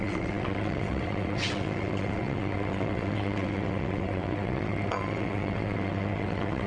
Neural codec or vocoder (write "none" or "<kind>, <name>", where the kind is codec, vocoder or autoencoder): vocoder, WaveNeXt